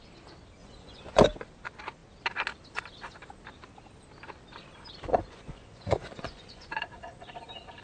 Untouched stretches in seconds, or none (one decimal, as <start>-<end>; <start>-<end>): 0.0-0.6; 1.2-5.1; 6.7-7.8